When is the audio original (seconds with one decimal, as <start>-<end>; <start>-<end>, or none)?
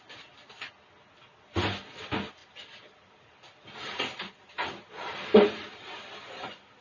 0.0-2.4